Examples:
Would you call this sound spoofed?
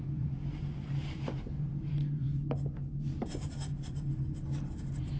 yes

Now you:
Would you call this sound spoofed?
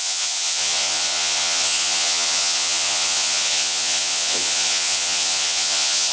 yes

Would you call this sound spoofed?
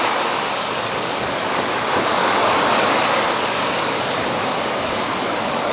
yes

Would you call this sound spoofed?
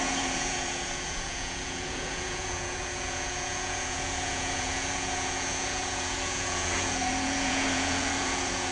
yes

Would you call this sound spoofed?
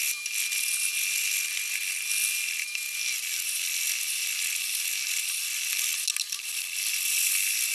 no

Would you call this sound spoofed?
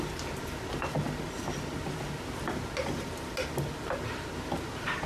no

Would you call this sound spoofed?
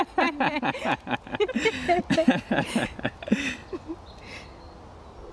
no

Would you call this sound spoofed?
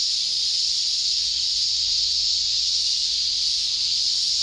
yes